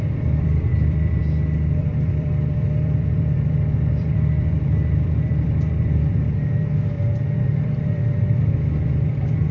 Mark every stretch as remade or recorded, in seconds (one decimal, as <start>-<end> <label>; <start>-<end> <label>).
0.0-1.2 remade; 1.2-1.8 recorded; 1.8-9.5 remade